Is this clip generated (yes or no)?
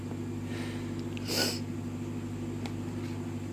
no